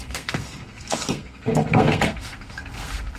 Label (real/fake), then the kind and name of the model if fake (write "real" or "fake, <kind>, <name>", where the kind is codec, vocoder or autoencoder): fake, codec, SNAC